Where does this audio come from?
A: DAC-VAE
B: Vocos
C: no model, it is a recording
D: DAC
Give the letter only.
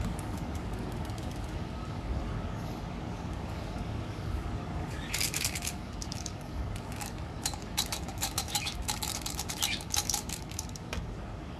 D